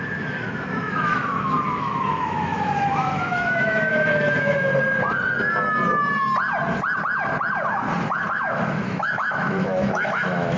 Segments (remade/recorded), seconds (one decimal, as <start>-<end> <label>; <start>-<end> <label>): 0.0-4.7 remade; 4.7-8.3 recorded; 8.3-10.6 remade